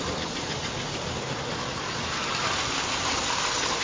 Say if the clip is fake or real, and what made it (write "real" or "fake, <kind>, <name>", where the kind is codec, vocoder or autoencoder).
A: real